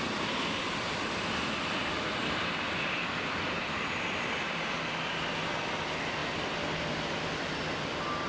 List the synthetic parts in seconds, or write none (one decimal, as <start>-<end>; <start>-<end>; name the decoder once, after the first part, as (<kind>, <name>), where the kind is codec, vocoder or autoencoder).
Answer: none